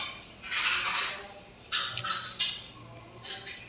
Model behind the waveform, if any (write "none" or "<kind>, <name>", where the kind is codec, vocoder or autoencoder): none